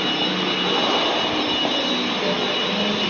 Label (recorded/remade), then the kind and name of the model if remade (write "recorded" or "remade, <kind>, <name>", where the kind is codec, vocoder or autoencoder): recorded